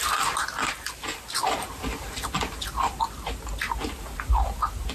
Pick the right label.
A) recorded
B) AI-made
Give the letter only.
A